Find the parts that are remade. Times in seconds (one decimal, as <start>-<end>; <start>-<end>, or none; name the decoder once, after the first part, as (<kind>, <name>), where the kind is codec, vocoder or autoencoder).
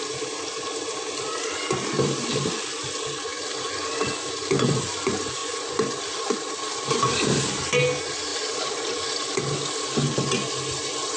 5.4-6.0 (vocoder, Vocos)